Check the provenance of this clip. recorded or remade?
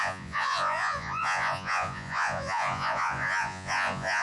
remade